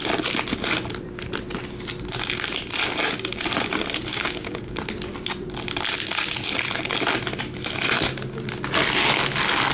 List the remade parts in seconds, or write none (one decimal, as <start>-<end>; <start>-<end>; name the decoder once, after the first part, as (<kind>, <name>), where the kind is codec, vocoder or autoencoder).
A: 4.1-4.8 (codec, DAC)